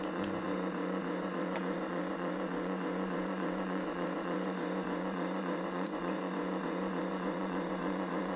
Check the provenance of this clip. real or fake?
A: fake